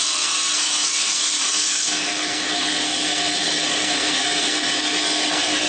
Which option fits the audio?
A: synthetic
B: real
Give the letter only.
A